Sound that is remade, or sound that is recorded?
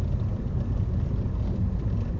recorded